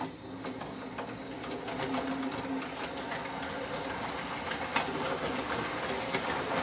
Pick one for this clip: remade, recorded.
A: recorded